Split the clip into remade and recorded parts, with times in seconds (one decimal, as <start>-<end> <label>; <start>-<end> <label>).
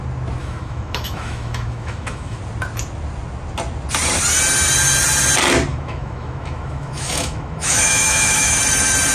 0.0-0.4 recorded; 0.4-2.4 remade; 2.4-5.7 recorded; 5.7-8.6 remade; 8.6-9.1 recorded